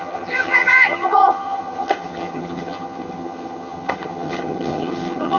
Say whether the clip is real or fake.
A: fake